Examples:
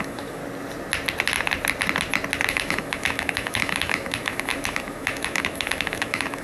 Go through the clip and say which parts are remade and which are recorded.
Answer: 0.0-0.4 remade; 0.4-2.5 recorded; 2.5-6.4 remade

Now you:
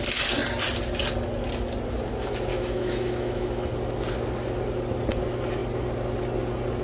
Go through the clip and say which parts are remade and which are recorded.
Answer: 0.0-2.5 recorded; 2.5-3.7 remade; 3.7-6.8 recorded